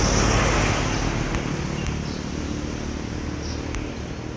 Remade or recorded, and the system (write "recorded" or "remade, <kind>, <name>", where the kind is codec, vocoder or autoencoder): recorded